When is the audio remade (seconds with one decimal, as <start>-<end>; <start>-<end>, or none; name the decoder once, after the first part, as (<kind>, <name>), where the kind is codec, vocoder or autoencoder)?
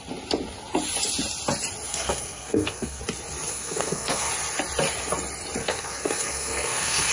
1.9-3.0 (codec, SNAC); 3.5-4.3; 5.6-7.1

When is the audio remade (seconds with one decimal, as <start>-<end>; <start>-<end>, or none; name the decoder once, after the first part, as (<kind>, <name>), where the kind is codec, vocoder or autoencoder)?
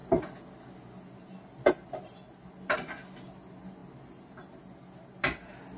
none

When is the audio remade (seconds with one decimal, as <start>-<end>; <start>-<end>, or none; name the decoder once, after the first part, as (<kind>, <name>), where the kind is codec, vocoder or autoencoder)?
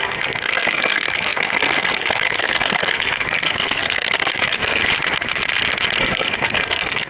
0.0-4.8 (codec, SNAC); 6.0-7.1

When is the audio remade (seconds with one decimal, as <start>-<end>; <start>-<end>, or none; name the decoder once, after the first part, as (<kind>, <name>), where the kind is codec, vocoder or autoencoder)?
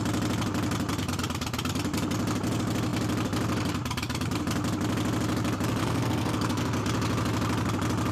5.8-6.8 (codec, SNAC)